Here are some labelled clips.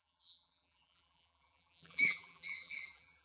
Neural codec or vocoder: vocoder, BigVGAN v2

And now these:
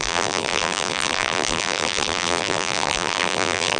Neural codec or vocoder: vocoder, BigVGAN v2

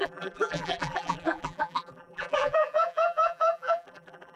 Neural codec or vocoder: vocoder, BigVGAN v2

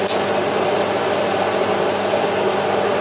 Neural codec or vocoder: none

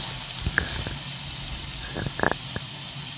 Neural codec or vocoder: none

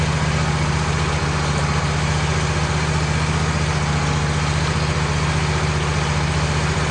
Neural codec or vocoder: none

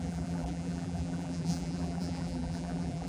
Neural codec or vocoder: vocoder, BigVGAN v2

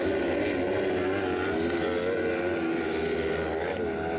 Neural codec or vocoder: none